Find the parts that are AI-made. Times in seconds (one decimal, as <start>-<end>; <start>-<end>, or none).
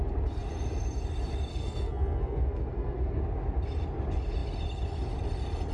1.5-3.2